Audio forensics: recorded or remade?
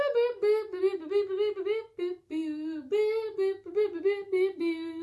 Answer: recorded